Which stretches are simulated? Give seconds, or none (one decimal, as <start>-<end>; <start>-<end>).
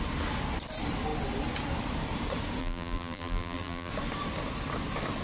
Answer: 2.6-3.9